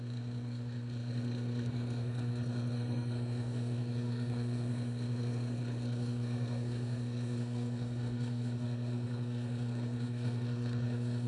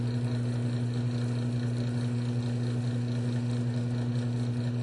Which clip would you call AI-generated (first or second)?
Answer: first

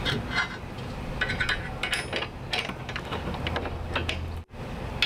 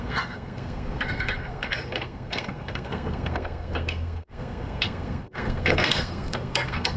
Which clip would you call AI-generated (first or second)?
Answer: second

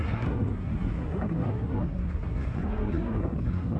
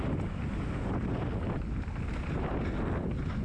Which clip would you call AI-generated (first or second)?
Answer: first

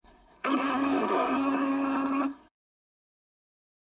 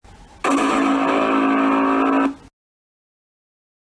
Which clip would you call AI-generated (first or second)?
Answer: first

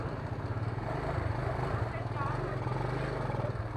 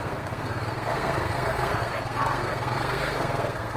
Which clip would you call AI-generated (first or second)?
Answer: second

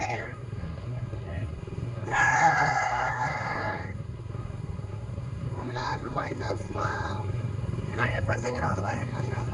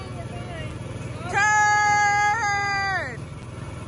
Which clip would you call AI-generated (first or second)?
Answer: first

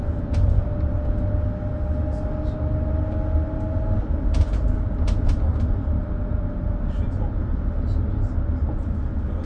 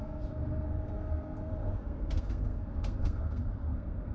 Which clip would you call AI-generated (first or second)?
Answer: second